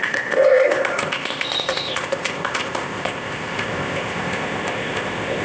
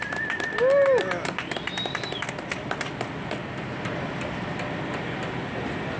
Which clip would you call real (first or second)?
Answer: second